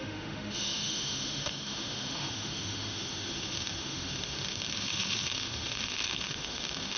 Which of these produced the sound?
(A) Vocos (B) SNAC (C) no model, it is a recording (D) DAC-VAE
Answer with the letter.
D